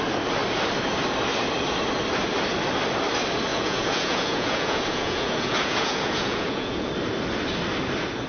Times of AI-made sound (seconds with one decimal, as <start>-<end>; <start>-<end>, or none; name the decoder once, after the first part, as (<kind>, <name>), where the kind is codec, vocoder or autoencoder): 3.5-6.9 (vocoder, Vocos)